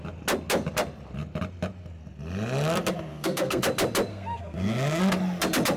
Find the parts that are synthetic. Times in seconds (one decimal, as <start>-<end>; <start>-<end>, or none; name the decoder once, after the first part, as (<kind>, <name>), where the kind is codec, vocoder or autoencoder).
3.1-3.6 (codec, SNAC); 4.1-5.0